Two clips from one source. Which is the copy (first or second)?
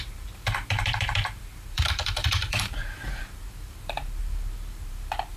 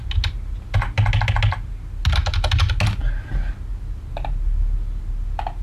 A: first